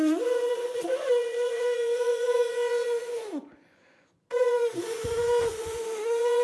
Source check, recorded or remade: remade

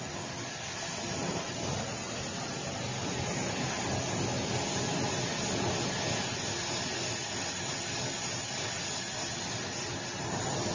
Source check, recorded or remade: recorded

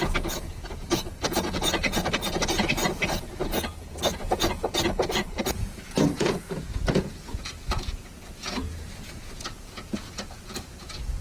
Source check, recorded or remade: remade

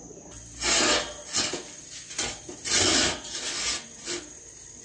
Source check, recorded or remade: recorded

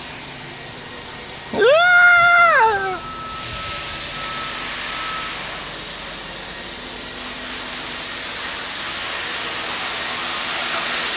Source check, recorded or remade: recorded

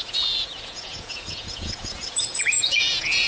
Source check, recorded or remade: remade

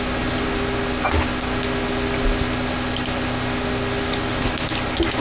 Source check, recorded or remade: recorded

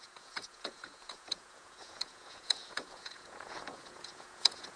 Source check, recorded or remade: remade